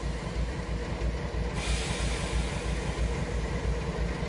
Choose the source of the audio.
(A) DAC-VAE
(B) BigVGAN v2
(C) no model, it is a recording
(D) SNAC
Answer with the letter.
C